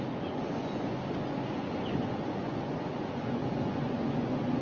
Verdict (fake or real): fake